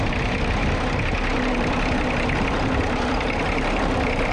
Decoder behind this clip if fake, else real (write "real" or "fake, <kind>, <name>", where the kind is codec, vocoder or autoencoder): fake, vocoder, BigVGAN v2